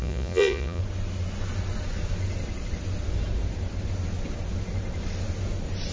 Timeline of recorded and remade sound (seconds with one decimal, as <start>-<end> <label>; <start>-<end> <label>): 0.0-0.8 remade; 0.8-5.9 recorded